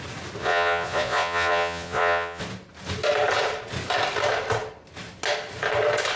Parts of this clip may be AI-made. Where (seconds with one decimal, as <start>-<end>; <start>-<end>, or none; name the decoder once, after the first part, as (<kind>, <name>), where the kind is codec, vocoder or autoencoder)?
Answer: 0.4-2.4 (vocoder, Vocos)